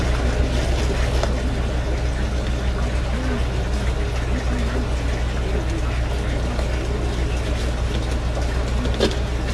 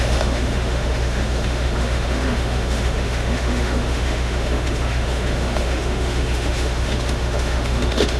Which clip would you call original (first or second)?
first